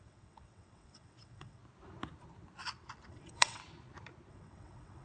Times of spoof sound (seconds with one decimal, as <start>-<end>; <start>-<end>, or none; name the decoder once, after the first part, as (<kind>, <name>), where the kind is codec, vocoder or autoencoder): 0.0-1.6 (vocoder, WaveNeXt); 3.1-3.6; 4.3-5.0